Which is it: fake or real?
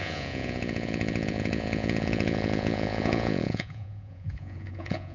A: fake